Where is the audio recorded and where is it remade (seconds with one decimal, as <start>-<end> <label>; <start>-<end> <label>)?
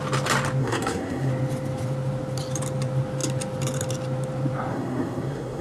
0.0-0.6 recorded; 0.6-1.3 remade; 1.3-4.7 recorded; 4.7-5.6 remade